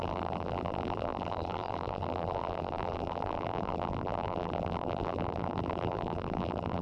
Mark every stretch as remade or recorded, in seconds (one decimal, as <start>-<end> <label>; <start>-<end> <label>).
0.0-6.8 remade